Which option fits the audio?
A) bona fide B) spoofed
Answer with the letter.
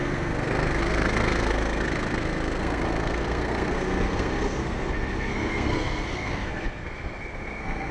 B